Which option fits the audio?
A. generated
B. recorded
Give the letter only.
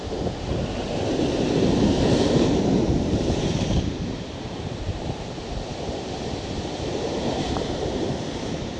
A